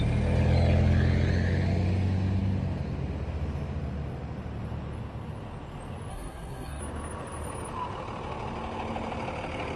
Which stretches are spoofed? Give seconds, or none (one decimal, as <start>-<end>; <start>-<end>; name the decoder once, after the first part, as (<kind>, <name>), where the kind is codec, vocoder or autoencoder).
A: 6.1-6.8 (codec, SNAC)